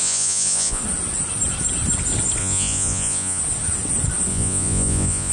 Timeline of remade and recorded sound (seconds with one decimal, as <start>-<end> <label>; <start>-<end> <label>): 0.0-0.8 remade; 0.8-2.4 recorded; 2.4-3.4 remade; 3.4-4.3 recorded; 4.3-5.3 remade